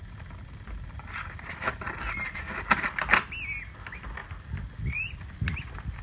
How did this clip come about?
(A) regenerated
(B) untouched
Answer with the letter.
B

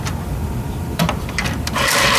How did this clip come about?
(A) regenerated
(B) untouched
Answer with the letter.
A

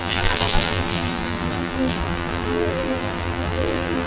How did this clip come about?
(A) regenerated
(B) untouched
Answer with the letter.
A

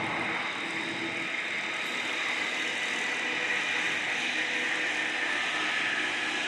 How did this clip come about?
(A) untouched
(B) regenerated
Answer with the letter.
A